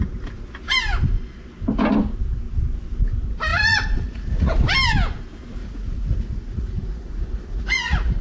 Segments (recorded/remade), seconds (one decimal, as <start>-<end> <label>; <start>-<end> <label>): 0.0-3.5 recorded; 3.5-4.5 remade; 4.5-5.6 recorded; 5.6-8.2 remade